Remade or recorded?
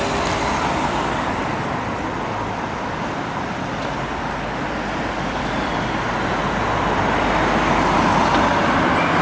recorded